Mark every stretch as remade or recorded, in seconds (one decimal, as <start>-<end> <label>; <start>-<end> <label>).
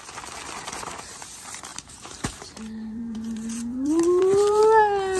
0.0-1.7 recorded; 1.7-4.6 remade; 4.6-5.2 recorded